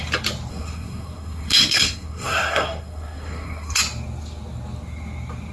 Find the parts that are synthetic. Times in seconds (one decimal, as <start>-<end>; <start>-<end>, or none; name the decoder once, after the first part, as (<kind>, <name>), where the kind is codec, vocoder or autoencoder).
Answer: 0.5-3.8 (codec, SNAC)